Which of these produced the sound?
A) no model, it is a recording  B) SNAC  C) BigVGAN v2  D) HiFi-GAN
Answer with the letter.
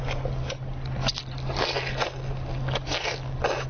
A